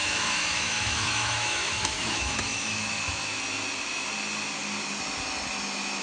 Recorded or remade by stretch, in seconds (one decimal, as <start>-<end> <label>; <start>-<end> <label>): 0.0-3.4 remade; 3.4-6.0 recorded

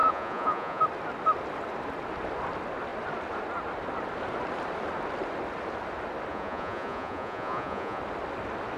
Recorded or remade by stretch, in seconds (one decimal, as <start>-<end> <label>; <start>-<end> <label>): 0.0-0.8 remade; 0.8-6.3 recorded; 6.3-8.0 remade; 8.0-8.8 recorded